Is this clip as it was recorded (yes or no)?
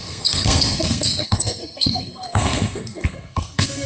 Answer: no